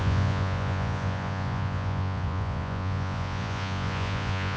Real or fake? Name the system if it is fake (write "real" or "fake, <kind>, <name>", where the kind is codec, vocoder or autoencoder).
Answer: fake, vocoder, Vocos